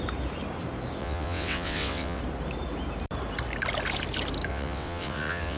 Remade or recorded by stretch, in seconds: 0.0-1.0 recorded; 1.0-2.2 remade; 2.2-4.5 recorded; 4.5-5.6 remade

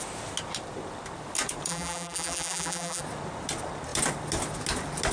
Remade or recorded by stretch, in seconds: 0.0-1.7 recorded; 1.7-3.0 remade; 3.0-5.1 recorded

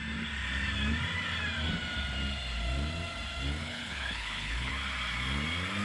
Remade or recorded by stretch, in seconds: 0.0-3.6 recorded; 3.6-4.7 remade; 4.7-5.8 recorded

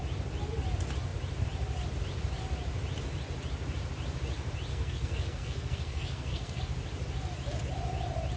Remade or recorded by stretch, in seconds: 0.0-4.7 recorded; 4.7-6.6 remade; 6.6-8.4 recorded